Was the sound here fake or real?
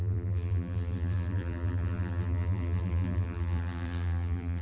fake